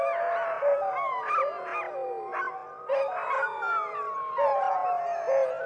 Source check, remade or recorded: recorded